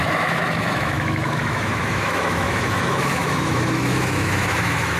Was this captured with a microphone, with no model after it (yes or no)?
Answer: no